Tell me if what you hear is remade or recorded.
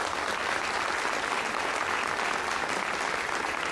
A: recorded